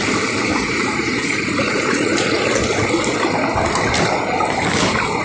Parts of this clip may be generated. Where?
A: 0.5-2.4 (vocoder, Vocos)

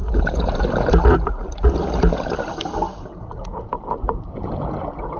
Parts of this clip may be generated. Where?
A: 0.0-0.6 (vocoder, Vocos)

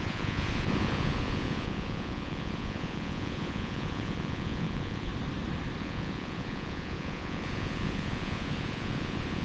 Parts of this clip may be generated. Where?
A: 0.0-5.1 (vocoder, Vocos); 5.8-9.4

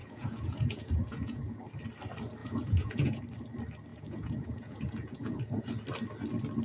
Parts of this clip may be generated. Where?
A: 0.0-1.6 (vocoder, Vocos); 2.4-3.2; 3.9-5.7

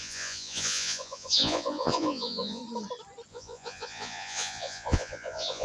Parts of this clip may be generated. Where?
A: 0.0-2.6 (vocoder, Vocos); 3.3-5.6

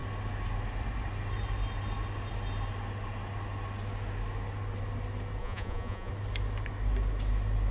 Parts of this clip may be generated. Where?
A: 5.4-6.1 (vocoder, Vocos)